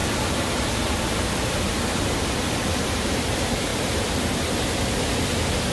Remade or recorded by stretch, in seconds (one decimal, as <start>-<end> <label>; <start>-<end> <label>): 0.0-1.7 remade; 1.7-2.6 recorded; 2.6-3.7 remade; 3.7-5.7 recorded